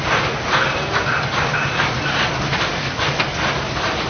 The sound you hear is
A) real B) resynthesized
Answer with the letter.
A